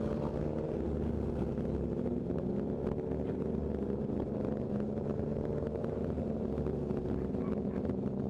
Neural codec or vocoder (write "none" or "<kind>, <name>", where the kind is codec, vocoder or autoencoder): none